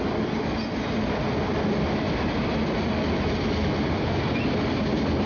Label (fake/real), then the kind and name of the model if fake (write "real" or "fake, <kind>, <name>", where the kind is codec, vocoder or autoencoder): real